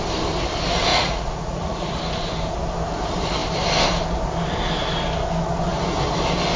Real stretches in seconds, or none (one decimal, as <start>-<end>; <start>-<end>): 0.0-0.9; 1.9-6.6